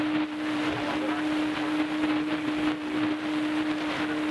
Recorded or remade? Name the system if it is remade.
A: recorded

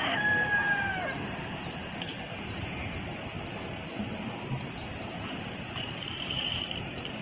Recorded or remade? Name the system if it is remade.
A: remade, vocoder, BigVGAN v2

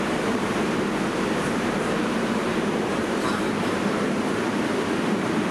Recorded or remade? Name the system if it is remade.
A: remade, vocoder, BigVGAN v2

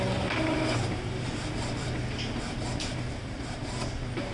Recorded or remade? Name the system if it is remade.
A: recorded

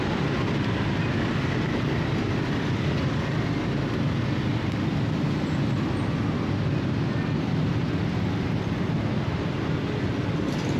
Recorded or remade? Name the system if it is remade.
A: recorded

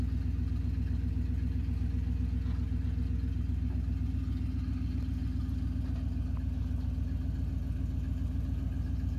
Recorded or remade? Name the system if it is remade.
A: recorded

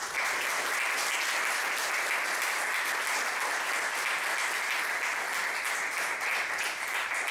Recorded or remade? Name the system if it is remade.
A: recorded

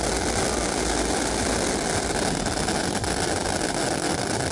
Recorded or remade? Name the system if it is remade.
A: recorded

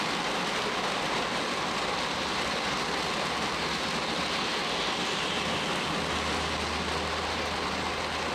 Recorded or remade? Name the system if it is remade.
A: recorded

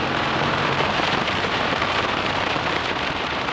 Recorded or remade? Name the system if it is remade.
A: remade, vocoder, BigVGAN v2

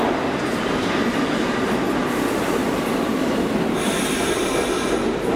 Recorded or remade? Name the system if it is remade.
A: recorded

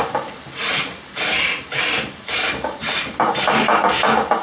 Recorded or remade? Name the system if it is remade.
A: remade, vocoder, BigVGAN v2